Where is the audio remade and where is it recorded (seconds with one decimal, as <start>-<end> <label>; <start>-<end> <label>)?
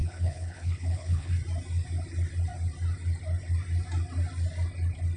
0.0-1.3 remade; 1.3-5.2 recorded